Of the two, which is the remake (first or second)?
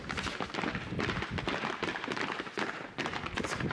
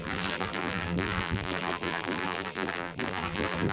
second